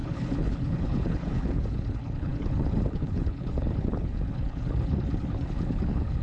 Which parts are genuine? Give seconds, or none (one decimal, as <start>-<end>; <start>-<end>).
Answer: none